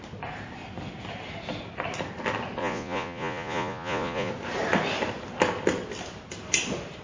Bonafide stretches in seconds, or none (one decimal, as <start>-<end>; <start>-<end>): 0.0-2.6; 4.3-7.0